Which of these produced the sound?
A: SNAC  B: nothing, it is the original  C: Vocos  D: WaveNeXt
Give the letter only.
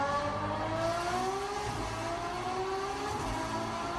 B